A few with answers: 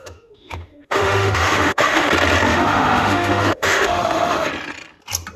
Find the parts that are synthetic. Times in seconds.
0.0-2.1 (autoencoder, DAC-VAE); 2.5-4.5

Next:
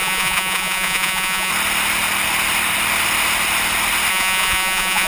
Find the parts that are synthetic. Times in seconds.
0.0-1.5 (vocoder, Vocos); 4.1-5.1

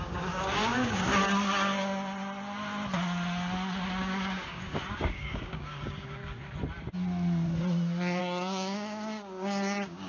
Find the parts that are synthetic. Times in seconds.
0.0-1.1 (codec, DAC); 4.0-6.2; 8.2-10.1

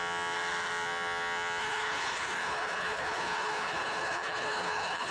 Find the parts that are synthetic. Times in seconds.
1.6-5.1 (codec, HILCodec)

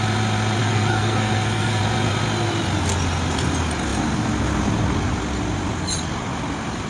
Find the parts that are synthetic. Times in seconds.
0.6-1.8 (codec, SNAC)

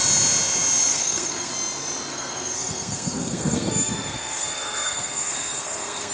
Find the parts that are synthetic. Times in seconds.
0.9-1.5 (codec, SNAC); 2.1-6.1